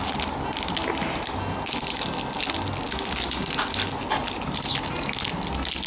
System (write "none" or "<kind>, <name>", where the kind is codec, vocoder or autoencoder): none